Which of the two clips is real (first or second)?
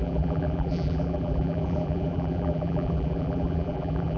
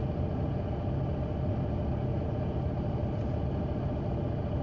second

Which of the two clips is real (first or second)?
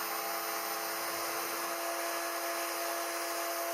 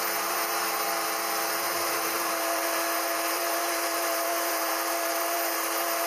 first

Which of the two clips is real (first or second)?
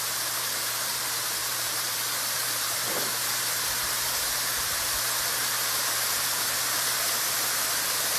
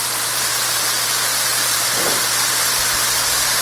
second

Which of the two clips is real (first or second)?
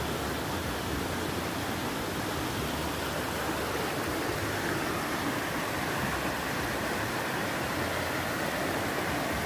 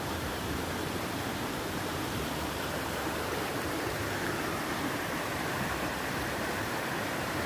first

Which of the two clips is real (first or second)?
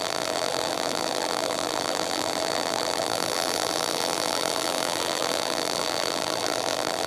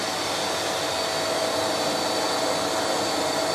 second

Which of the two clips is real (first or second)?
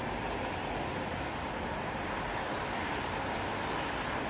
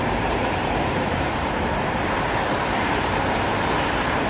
first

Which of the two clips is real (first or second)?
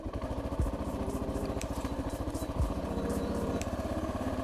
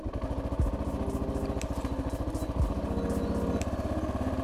second